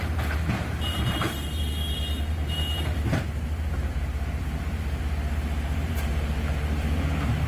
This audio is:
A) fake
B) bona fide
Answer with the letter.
A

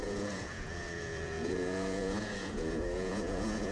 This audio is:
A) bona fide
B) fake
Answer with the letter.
B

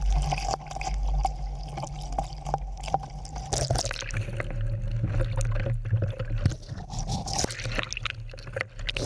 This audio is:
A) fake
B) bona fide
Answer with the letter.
B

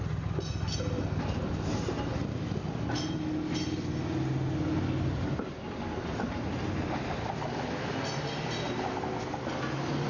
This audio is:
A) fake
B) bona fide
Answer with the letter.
B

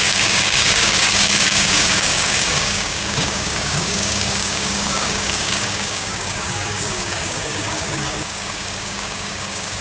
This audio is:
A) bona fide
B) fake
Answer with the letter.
B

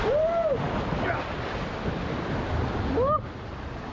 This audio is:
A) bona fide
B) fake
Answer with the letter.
A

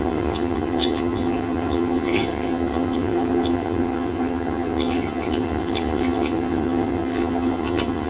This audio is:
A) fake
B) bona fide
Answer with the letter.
A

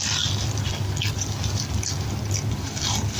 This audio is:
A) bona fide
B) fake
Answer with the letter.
A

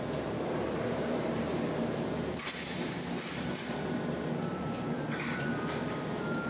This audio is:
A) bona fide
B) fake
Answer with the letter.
B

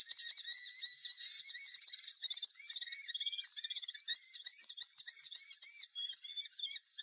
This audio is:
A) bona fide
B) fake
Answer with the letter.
A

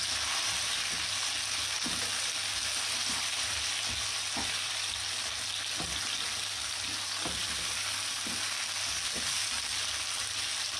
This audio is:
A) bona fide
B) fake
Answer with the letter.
A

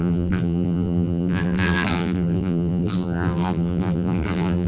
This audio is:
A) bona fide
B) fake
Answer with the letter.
B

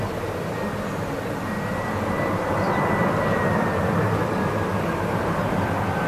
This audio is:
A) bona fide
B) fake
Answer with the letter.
A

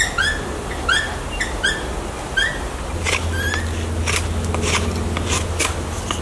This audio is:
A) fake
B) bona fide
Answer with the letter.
B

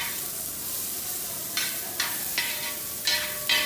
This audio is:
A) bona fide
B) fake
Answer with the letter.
A